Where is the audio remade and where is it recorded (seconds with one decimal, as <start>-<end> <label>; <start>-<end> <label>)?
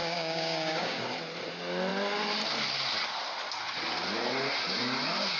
0.0-1.0 remade; 1.0-5.4 recorded